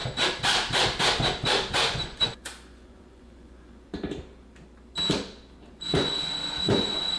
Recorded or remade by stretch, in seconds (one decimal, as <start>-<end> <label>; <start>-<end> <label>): 0.0-1.7 recorded; 1.7-3.9 remade; 3.9-5.7 recorded; 5.7-7.2 remade